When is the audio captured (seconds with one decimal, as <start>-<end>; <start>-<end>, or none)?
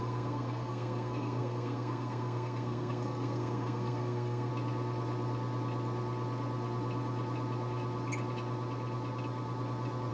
4.5-10.1